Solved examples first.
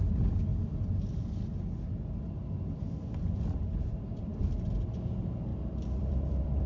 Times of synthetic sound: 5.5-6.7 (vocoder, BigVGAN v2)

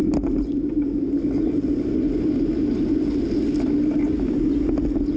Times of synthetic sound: none

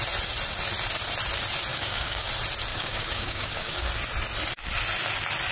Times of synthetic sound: 1.7-2.3 (codec, DAC); 2.7-3.9

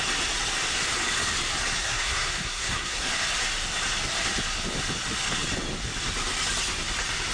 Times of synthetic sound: 1.8-3.1 (codec, SNAC)

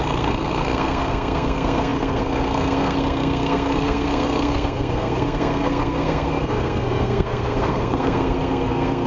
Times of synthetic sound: 0.0-9.1 (codec, SNAC)